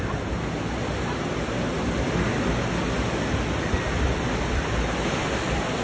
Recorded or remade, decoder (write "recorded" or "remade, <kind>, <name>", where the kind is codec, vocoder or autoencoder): recorded